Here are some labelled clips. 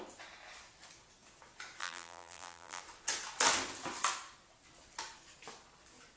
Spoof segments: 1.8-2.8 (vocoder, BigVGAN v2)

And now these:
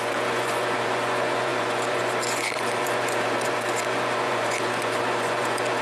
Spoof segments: 0.0-5.8 (vocoder, Vocos)

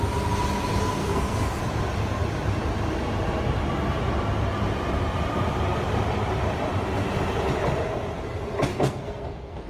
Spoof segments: 1.0-1.6 (codec, SNAC); 8.7-9.7

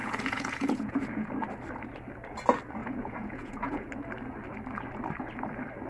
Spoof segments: 0.0-1.3 (vocoder, Vocos); 2.8-3.9

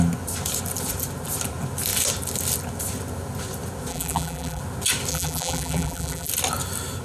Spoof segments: 3.9-4.6 (vocoder, BigVGAN v2); 5.1-6.3

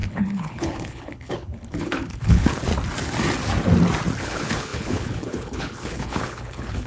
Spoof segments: 0.0-2.7 (codec, HILCodec); 4.2-6.9

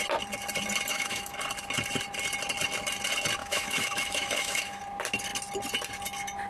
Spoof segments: 0.9-1.4 (autoencoder, DAC-VAE); 3.4-4.8